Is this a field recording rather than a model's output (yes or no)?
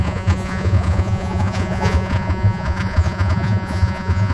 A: no